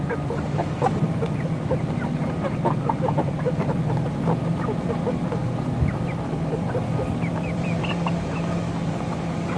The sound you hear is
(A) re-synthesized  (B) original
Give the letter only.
A